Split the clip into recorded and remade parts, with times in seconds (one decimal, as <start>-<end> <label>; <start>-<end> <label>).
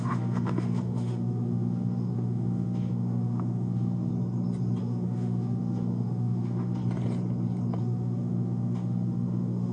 0.0-4.1 remade; 4.1-4.8 recorded; 4.8-6.8 remade; 6.8-7.8 recorded; 7.8-9.7 remade